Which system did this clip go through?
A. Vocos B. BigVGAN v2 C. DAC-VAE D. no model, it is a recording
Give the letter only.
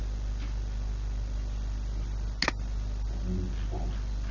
D